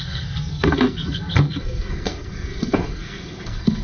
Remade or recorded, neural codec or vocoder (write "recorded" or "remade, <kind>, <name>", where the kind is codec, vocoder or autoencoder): remade, codec, SNAC